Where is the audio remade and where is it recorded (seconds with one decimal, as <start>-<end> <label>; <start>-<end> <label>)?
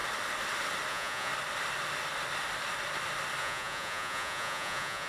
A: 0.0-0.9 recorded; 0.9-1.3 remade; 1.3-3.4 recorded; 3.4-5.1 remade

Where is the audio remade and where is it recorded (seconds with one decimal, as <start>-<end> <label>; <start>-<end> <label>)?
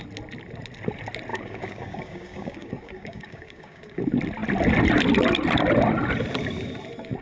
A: 0.0-1.3 recorded; 1.3-4.0 remade; 4.0-7.2 recorded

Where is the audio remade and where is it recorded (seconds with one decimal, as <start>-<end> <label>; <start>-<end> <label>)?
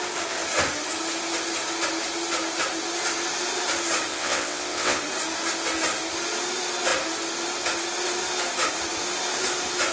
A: 0.0-4.1 recorded; 4.1-5.0 remade; 5.0-9.9 recorded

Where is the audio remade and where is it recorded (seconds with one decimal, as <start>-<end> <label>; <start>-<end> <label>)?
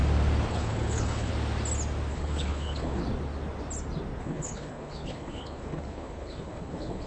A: 0.0-0.5 recorded; 0.5-1.3 remade; 1.3-2.1 recorded; 2.1-3.0 remade; 3.0-4.2 recorded; 4.2-7.1 remade